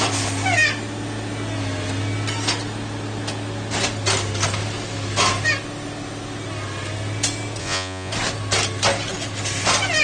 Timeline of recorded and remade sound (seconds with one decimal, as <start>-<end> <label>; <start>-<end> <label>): 0.0-7.6 recorded; 7.6-8.1 remade; 8.1-10.0 recorded